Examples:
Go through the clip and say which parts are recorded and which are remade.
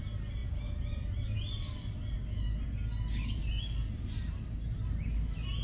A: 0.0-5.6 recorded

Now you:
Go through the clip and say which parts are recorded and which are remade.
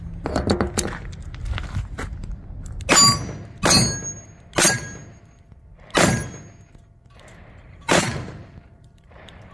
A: 0.0-7.6 recorded; 7.6-9.5 remade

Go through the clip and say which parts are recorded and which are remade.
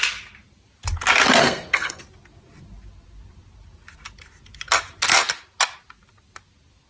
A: 0.0-1.4 recorded; 1.4-2.0 remade; 2.0-6.9 recorded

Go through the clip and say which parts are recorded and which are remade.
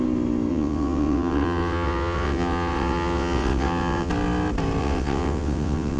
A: 0.0-0.5 recorded; 0.5-4.1 remade; 4.1-4.8 recorded; 4.8-6.0 remade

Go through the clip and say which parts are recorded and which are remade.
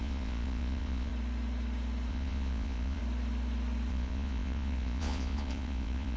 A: 0.0-1.1 remade; 1.1-2.1 recorded; 2.1-3.0 remade; 3.0-3.9 recorded; 3.9-6.2 remade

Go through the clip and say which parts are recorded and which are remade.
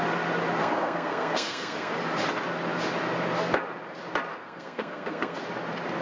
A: 0.0-0.6 recorded; 0.6-1.9 remade; 1.9-4.3 recorded; 4.3-5.4 remade; 5.4-6.0 recorded